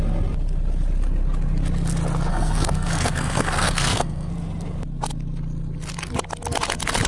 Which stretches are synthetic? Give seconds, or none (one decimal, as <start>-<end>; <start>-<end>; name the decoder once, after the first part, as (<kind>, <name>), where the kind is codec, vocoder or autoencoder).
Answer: 2.3-4.3 (codec, SNAC)